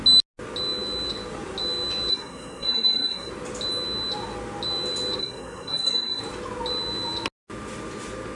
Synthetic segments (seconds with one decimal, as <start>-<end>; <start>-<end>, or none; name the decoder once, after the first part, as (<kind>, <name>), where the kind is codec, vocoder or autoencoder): 2.1-3.3 (codec, SNAC); 5.2-6.2